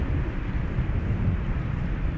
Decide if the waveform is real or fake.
real